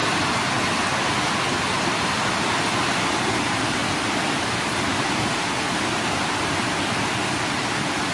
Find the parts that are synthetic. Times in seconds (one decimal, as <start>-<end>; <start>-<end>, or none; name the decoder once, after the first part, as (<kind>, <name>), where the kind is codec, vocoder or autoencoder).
2.5-8.1 (vocoder, BigVGAN v2)